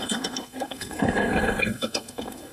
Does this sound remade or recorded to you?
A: remade